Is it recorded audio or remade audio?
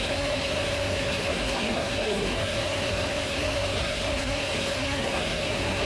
remade